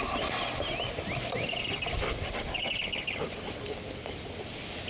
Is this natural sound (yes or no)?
yes